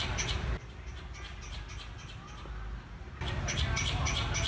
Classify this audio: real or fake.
real